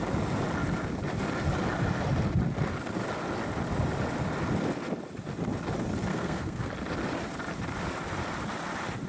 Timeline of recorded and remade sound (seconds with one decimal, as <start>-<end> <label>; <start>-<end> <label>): 0.0-6.1 recorded; 6.1-6.7 remade; 6.7-9.1 recorded